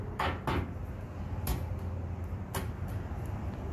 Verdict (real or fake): real